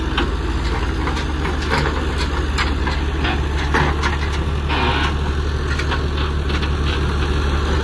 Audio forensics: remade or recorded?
recorded